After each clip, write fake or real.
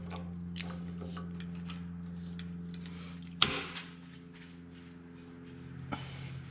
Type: real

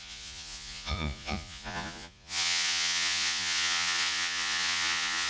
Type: fake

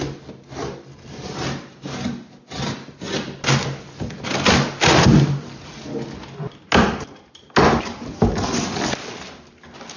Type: real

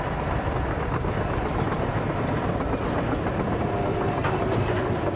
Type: fake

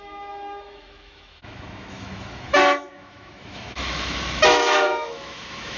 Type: fake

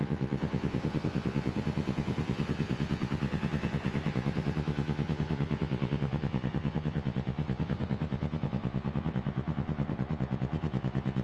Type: fake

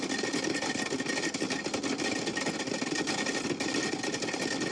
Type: real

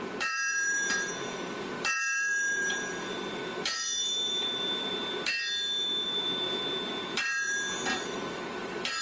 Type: fake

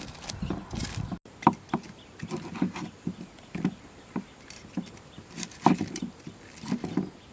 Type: real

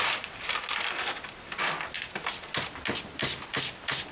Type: real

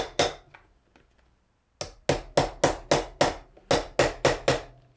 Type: real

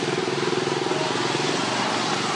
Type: real